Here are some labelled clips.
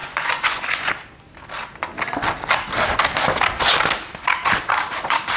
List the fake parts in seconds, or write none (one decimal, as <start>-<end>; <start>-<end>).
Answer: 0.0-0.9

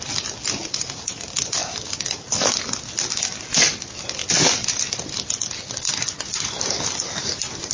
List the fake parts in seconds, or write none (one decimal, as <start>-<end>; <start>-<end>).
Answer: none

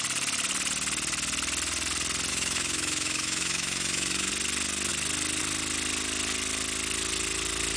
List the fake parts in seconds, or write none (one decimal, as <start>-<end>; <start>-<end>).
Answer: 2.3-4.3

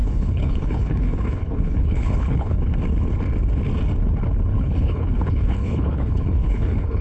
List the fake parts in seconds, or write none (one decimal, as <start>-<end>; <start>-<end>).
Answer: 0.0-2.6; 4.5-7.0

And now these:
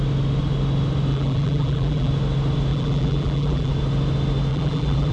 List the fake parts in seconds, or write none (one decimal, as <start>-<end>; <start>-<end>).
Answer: 1.1-2.1; 2.7-3.7; 4.5-5.1

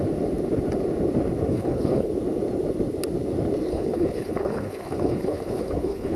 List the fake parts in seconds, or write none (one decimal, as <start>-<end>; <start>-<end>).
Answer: 1.5-2.1; 3.7-6.2